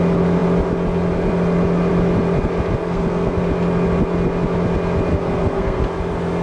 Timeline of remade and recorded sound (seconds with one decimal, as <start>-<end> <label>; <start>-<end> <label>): 0.0-2.8 recorded; 2.8-3.4 remade; 3.4-5.1 recorded; 5.1-5.8 remade; 5.8-6.4 recorded